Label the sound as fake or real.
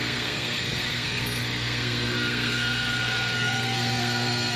fake